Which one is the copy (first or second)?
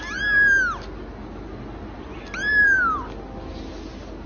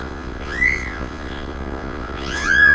second